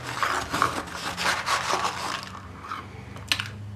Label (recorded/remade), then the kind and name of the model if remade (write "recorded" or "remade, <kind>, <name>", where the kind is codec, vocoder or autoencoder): recorded